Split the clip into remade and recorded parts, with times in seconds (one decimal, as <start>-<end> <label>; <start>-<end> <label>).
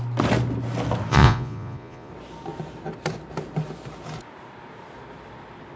0.0-1.1 recorded; 1.1-2.1 remade; 2.1-5.8 recorded